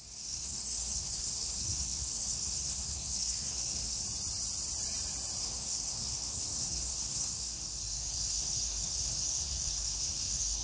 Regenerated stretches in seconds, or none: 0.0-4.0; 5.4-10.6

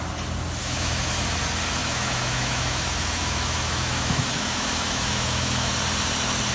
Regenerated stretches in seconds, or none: 0.6-1.1; 1.8-5.7